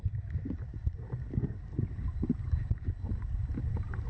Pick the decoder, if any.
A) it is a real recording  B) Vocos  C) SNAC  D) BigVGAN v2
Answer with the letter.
D